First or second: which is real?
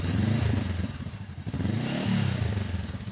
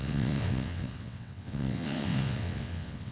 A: first